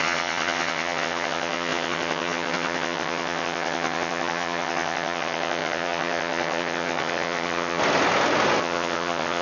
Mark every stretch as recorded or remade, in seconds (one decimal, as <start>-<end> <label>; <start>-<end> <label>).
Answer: 0.0-7.8 remade; 7.8-8.6 recorded; 8.6-9.4 remade